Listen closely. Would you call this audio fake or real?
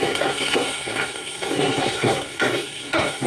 fake